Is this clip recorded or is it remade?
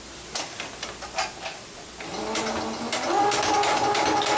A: recorded